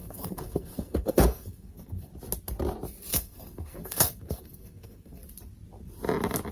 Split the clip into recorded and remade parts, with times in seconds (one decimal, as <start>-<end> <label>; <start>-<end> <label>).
0.0-2.1 remade; 2.1-3.1 recorded; 3.1-5.2 remade; 5.2-6.5 recorded